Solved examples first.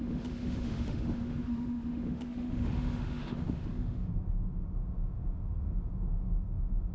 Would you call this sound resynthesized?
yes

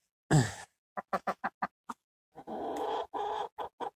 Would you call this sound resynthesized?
no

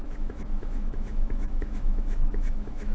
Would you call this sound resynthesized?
yes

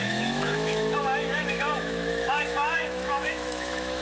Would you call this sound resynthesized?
yes